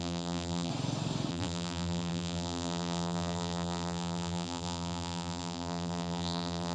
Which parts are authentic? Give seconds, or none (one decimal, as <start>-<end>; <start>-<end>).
0.7-1.3